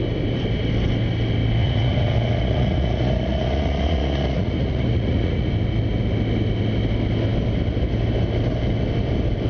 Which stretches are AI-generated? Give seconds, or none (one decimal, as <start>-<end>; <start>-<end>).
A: 1.6-5.5